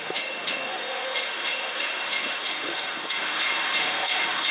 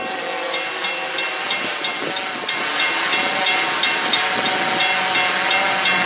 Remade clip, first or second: first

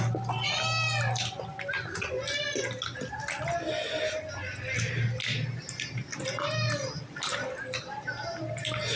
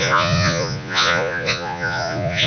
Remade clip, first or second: second